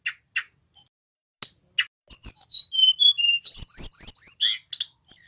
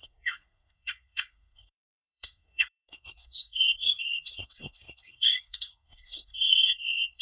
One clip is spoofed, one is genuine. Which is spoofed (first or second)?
second